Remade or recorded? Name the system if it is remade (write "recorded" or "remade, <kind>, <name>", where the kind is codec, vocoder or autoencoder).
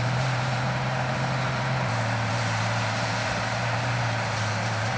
remade, vocoder, BigVGAN v2